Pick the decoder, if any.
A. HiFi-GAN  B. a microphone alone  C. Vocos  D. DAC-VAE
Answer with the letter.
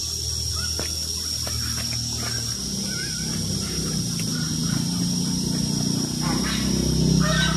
B